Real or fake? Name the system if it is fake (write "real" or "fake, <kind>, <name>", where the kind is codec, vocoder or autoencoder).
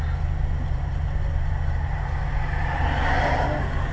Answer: real